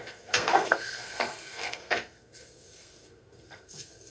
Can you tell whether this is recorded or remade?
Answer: remade